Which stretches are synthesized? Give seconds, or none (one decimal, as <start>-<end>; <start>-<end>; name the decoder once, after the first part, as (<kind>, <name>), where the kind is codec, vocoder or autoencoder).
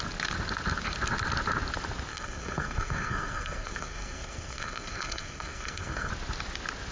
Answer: 2.1-6.1 (codec, SNAC)